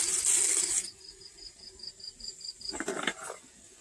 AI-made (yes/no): no